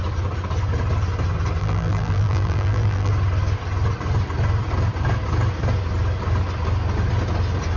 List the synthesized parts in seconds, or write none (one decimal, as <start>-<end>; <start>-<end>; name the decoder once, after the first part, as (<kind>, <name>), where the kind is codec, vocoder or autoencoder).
1.6-3.1 (vocoder, BigVGAN v2)